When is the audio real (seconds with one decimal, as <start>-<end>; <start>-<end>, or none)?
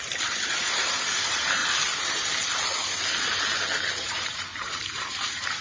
1.6-4.0